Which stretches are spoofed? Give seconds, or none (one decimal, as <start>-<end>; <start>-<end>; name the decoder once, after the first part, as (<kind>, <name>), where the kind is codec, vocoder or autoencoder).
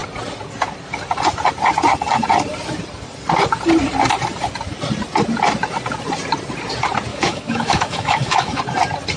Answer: 7.1-8.6 (autoencoder, DAC-VAE)